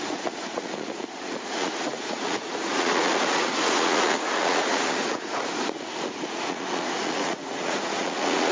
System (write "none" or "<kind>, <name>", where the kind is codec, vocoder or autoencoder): vocoder, Vocos